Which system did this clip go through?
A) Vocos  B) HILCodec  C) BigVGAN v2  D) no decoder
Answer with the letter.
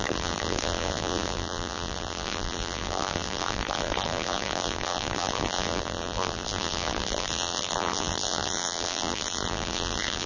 C